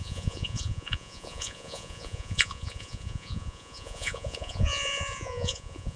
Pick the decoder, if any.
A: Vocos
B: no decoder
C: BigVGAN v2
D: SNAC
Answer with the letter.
A